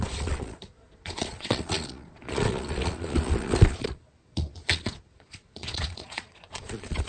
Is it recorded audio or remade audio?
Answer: remade